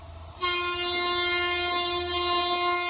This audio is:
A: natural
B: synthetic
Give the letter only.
A